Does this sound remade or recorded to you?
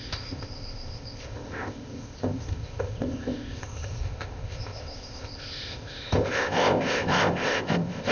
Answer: remade